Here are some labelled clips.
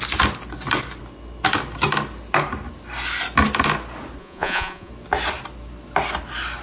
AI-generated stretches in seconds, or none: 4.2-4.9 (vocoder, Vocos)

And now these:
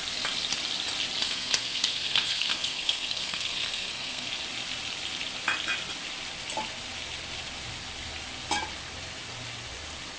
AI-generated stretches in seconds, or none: 1.2-4.3 (codec, SNAC)

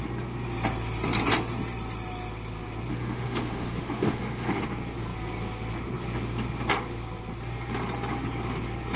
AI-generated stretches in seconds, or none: 2.9-4.6 (autoencoder, DAC-VAE)

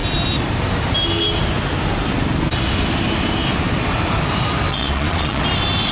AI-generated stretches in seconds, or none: 4.7-5.4 (vocoder, Vocos)

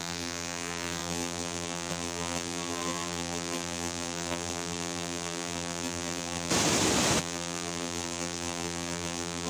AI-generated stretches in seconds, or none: 0.0-6.5 (vocoder, BigVGAN v2); 7.2-9.5

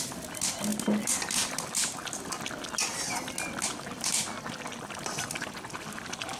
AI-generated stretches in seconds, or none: none